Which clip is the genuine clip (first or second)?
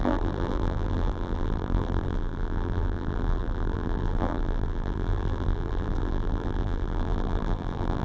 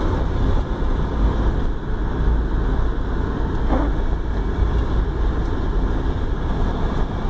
second